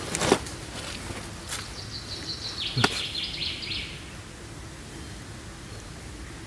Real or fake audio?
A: real